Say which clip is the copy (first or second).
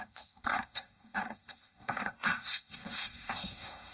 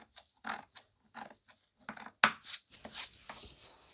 first